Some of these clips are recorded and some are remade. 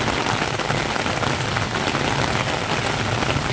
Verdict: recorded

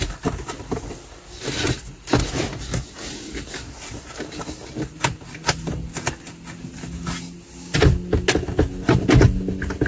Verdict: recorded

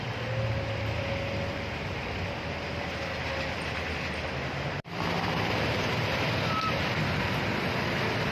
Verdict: recorded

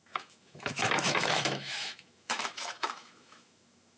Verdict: remade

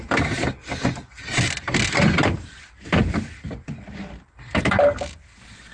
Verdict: recorded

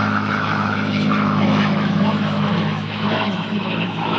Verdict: remade